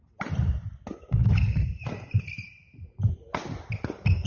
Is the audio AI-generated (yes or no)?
no